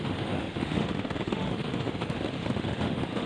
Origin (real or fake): fake